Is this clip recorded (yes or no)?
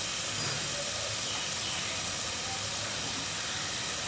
yes